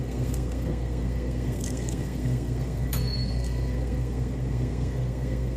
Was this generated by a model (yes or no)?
yes